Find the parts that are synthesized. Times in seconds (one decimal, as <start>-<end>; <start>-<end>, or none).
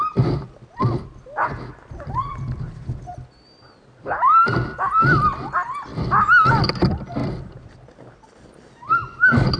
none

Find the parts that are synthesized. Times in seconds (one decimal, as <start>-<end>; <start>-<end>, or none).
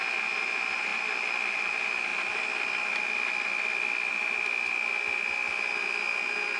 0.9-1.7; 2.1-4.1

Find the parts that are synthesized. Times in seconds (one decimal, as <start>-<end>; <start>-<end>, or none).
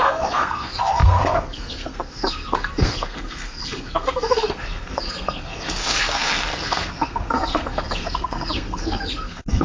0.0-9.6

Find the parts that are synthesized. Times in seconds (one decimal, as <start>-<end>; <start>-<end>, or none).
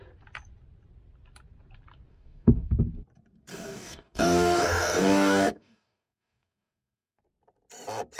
2.1-2.8; 3.5-7.2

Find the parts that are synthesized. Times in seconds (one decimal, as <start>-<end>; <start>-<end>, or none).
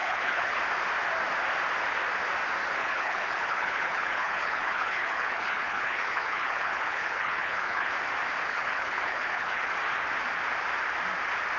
0.0-0.6; 2.8-7.9; 8.5-9.7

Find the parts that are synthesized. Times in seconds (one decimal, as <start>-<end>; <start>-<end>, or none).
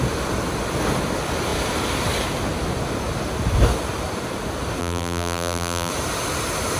4.8-5.9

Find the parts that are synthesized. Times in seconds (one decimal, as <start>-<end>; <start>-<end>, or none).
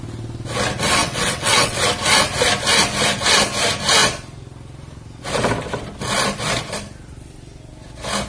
1.0-1.8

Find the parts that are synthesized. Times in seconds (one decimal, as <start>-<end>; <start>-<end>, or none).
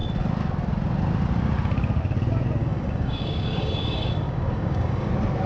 2.6-5.1